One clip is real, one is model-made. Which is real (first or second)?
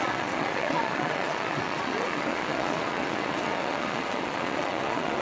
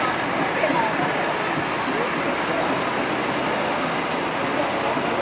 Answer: second